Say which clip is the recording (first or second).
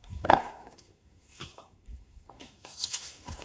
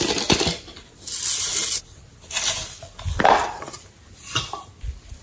second